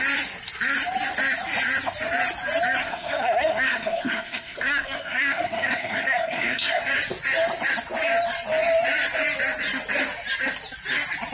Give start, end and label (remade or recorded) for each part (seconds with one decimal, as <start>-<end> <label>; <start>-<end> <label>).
0.0-2.8 recorded; 2.8-6.8 remade; 6.8-11.3 recorded